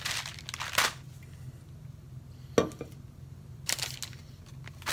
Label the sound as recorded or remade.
recorded